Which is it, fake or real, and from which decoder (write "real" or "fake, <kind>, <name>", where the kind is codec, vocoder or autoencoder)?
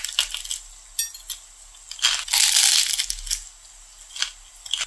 real